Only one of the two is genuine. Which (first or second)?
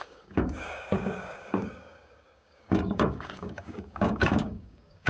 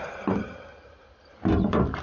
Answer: second